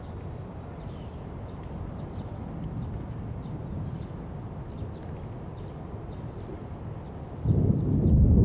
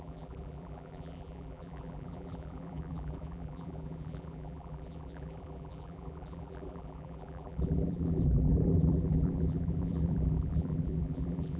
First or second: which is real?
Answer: first